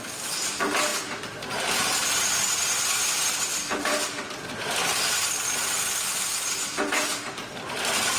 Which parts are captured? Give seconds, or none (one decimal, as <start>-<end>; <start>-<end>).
0.0-3.5; 6.1-8.2